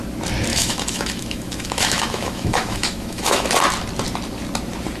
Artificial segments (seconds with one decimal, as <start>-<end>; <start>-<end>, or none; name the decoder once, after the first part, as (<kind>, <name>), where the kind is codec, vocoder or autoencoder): 0.5-3.5 (autoencoder, DAC-VAE)